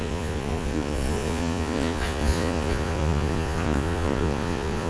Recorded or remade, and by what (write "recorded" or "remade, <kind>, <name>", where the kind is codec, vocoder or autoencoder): remade, vocoder, Vocos